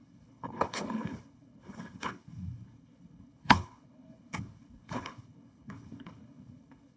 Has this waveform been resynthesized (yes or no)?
yes